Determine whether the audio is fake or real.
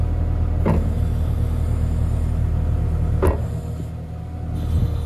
real